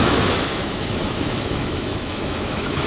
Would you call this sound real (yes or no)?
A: no